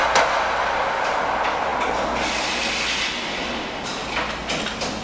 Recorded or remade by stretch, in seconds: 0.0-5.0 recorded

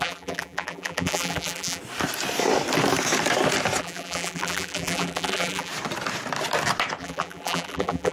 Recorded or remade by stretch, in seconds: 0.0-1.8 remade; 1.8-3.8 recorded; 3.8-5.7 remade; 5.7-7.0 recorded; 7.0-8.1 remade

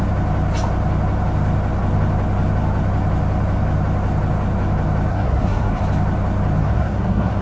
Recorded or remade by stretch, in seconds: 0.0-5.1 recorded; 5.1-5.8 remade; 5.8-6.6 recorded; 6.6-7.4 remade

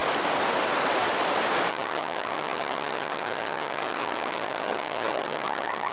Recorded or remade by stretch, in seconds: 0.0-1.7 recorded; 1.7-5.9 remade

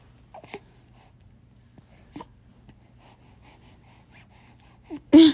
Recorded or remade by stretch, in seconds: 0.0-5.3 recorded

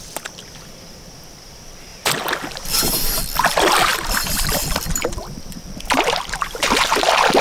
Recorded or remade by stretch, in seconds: 0.0-3.9 recorded; 3.9-7.0 remade; 7.0-7.4 recorded

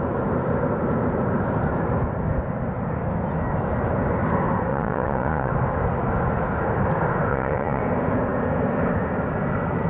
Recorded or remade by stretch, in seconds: 0.0-4.7 recorded; 4.7-5.5 remade; 5.5-7.3 recorded; 7.3-7.8 remade; 7.8-9.9 recorded

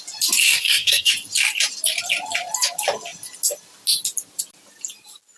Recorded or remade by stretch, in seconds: 0.0-0.4 recorded; 0.4-1.1 remade; 1.1-5.4 recorded